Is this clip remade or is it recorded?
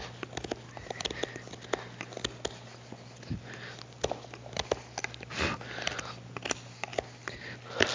recorded